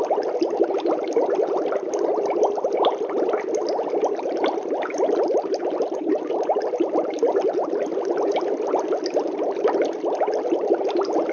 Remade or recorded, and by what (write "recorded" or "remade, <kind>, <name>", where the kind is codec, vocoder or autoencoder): recorded